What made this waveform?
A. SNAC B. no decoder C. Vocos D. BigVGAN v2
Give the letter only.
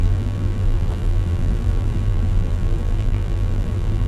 D